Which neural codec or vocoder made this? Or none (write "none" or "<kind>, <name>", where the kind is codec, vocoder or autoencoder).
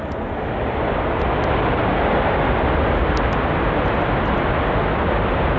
none